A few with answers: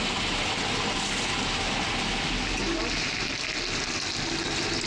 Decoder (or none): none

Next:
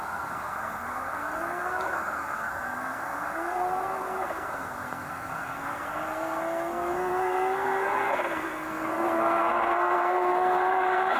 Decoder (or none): codec, SNAC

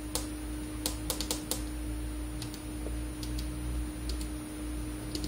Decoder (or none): none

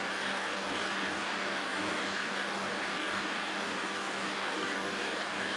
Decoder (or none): codec, DAC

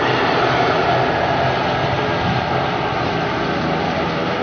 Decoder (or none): none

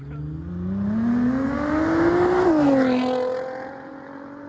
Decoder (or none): none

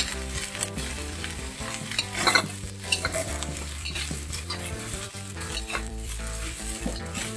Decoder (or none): vocoder, BigVGAN v2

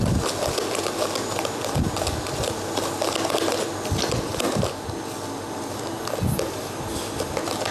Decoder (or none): none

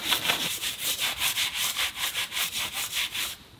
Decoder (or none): vocoder, BigVGAN v2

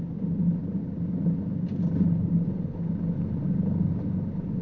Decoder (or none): none